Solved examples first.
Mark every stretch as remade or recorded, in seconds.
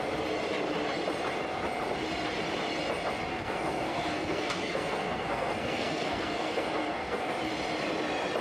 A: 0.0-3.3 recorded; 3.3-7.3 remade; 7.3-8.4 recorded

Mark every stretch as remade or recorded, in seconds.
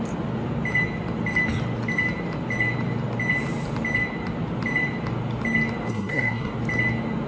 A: 0.0-5.9 recorded; 5.9-6.5 remade; 6.5-7.3 recorded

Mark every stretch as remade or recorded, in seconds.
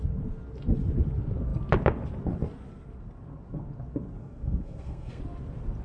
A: 0.0-4.2 recorded; 4.2-5.2 remade; 5.2-5.8 recorded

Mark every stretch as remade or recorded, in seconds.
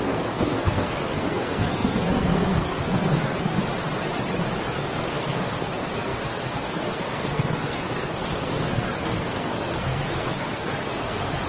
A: 0.0-3.6 remade; 3.6-4.6 recorded; 4.6-11.5 remade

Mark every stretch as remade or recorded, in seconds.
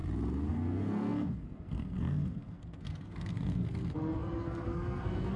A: 0.0-0.5 recorded; 0.5-5.4 remade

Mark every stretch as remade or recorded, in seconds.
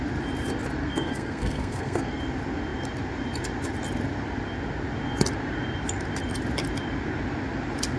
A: 0.0-0.8 recorded; 0.8-2.2 remade; 2.2-8.0 recorded